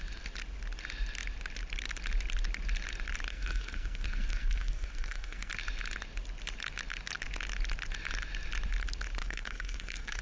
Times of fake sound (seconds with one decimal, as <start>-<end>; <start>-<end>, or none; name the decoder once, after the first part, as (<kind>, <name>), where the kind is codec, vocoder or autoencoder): 3.3-5.5 (codec, SNAC); 9.2-10.2

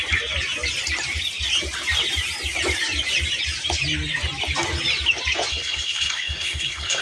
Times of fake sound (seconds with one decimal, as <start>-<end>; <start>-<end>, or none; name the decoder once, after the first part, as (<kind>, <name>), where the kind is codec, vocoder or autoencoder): 5.5-7.0 (codec, SNAC)